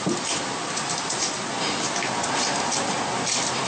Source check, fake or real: real